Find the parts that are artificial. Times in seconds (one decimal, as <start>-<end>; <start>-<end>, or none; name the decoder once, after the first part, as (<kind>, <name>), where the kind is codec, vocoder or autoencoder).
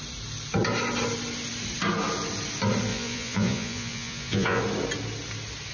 2.9-4.6 (vocoder, Vocos)